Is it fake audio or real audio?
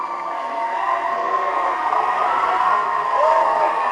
fake